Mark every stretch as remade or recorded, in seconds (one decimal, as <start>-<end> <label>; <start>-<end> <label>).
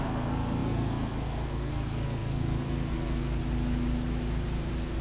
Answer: 0.0-3.4 remade; 3.4-5.0 recorded